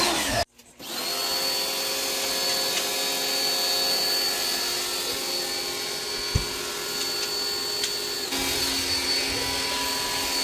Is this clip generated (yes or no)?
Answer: no